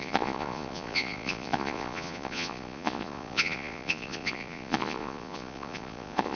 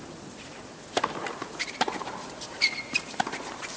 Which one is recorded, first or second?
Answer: second